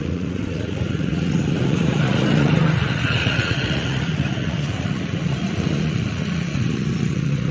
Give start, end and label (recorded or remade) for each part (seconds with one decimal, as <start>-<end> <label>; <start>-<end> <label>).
0.0-7.5 remade